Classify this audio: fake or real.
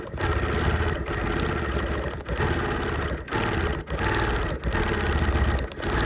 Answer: real